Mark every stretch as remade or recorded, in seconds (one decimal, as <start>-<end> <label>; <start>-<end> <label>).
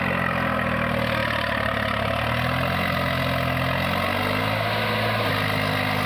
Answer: 0.0-6.1 recorded